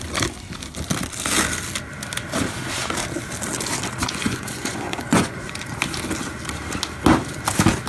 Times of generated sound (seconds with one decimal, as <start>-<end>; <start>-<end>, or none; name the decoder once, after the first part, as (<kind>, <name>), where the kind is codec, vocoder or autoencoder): 4.0-5.5 (vocoder, Vocos)